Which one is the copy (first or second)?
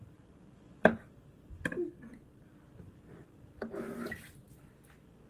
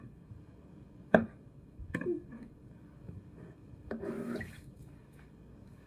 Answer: second